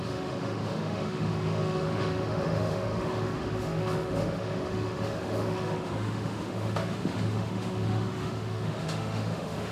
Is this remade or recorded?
remade